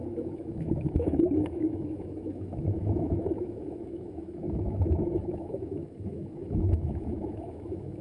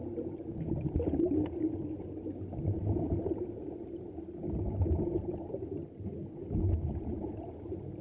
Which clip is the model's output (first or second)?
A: first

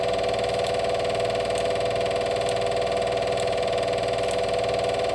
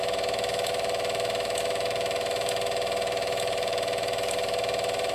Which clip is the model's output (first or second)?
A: second